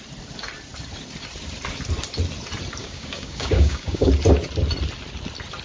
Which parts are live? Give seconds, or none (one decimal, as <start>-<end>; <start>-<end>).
0.0-2.8; 4.1-5.6